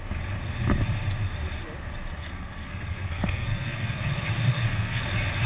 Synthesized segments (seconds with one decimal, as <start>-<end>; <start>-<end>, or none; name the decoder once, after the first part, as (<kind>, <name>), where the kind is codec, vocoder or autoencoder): 2.2-4.1 (codec, SNAC); 4.5-5.0